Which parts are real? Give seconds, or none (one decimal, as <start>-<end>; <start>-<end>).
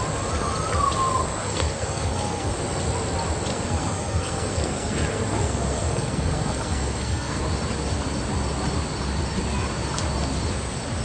0.0-1.2; 2.5-3.5; 7.4-11.0